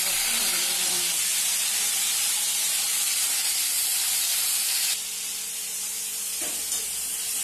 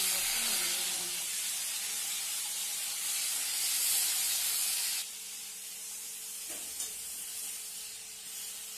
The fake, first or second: first